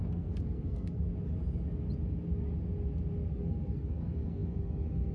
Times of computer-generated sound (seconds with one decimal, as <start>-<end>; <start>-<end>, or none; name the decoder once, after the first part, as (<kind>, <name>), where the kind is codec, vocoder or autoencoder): 0.0-1.1 (codec, SNAC); 3.3-5.1

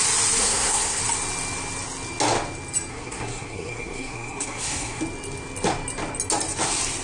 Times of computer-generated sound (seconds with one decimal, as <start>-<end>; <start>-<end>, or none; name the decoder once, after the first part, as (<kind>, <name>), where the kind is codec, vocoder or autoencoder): 0.4-1.0 (codec, SNAC); 2.9-5.0

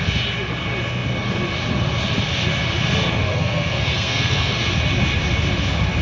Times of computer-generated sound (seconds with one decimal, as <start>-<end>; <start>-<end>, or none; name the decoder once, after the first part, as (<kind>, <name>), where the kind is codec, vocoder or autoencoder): 3.3-4.7 (codec, SNAC)

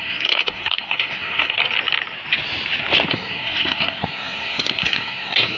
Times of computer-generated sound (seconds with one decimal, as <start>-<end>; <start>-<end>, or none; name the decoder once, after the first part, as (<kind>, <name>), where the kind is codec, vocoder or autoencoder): 0.0-1.6 (codec, SNAC); 3.1-5.6

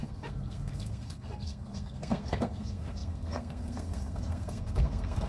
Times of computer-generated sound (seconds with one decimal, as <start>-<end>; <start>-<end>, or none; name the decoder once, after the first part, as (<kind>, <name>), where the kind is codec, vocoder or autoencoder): 0.0-5.3 (codec, SNAC)